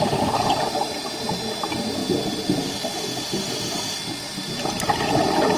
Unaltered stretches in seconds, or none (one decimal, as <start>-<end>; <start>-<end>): 0.0-5.6